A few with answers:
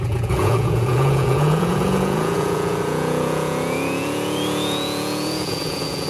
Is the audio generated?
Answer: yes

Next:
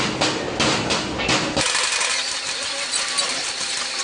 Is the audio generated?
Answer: no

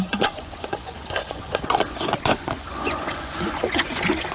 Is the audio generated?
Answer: yes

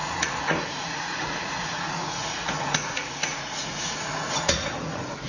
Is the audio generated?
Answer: yes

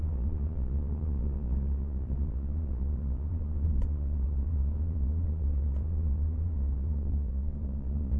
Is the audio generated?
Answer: yes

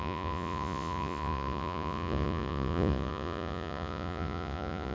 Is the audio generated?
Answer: yes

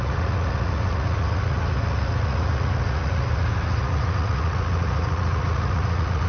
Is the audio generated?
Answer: yes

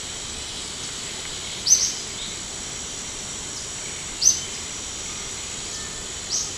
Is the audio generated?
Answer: no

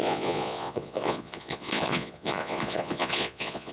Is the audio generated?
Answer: yes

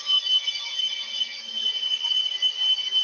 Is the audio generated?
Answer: no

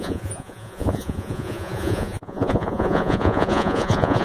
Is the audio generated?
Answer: yes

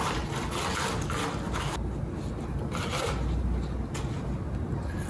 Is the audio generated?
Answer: no